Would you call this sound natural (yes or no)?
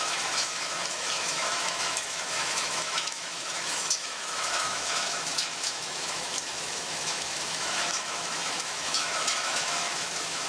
no